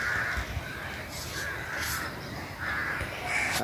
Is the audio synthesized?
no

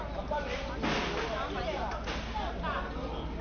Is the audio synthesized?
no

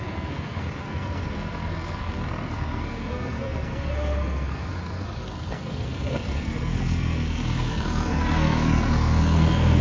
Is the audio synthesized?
yes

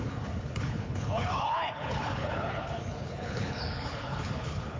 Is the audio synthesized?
yes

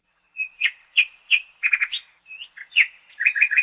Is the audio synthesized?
yes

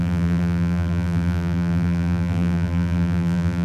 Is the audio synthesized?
yes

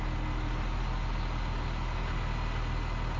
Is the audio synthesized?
no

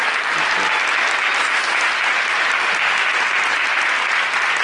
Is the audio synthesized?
no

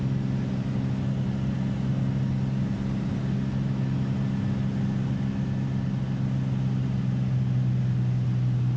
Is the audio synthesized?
no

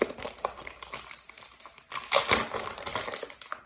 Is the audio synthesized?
no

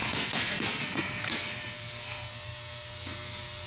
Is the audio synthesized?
yes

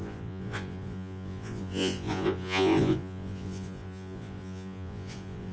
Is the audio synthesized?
yes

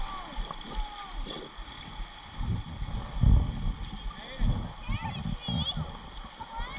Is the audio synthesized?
no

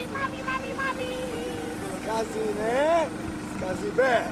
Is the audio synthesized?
no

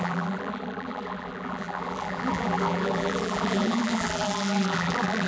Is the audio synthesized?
yes